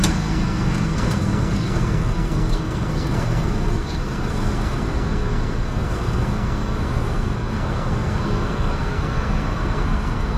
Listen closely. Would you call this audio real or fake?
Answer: fake